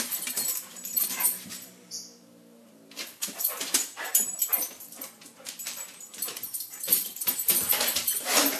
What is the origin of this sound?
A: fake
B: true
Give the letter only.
A